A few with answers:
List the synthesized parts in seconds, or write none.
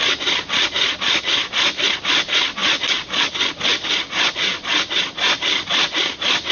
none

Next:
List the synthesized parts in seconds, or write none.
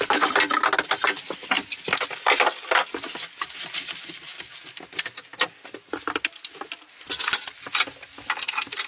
none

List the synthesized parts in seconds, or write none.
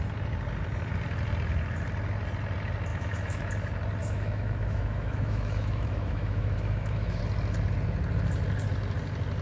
2.9-3.5 (autoencoder, DAC-VAE); 4.0-7.2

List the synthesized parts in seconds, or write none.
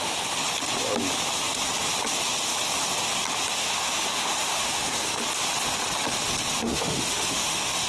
3.6-5.2 (autoencoder, DAC-VAE); 6.6-7.9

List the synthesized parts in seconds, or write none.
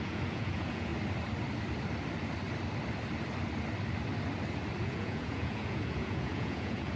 0.0-0.9 (vocoder, Vocos); 4.8-7.0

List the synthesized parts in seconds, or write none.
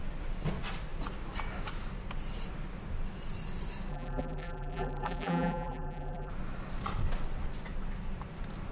3.9-6.3 (vocoder, BigVGAN v2)